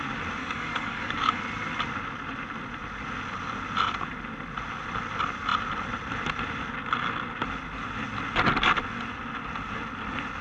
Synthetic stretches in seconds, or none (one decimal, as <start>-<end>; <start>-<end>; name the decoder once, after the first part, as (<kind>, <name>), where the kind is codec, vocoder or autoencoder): 0.4-1.4 (codec, DAC)